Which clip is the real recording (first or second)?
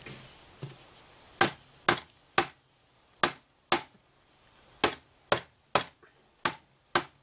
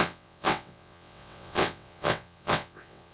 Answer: first